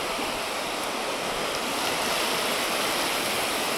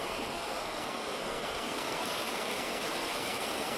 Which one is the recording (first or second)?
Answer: first